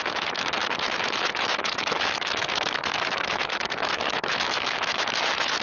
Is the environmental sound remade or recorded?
remade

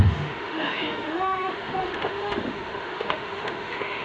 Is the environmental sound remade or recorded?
remade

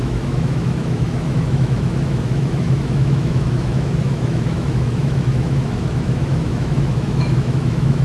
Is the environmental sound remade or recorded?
remade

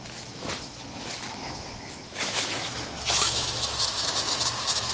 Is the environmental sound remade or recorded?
remade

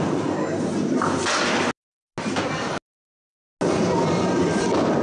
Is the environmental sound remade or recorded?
recorded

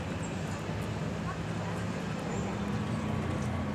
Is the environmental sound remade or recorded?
recorded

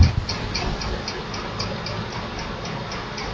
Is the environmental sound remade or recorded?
recorded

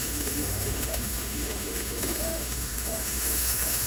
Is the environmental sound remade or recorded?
remade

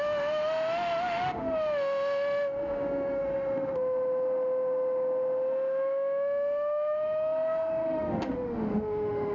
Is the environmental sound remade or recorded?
remade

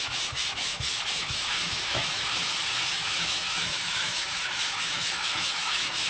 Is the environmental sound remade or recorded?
remade